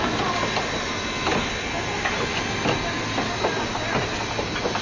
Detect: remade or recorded recorded